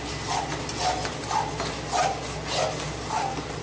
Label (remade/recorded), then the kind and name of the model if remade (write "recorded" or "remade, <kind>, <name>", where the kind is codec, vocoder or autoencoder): recorded